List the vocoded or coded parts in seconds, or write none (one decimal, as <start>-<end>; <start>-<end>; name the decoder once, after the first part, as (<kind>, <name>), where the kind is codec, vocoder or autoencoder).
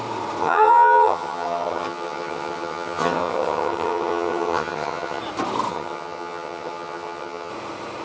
0.4-5.2 (vocoder, HiFi-GAN); 5.7-7.5